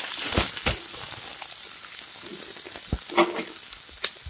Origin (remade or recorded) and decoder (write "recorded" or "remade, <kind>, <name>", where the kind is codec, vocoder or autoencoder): recorded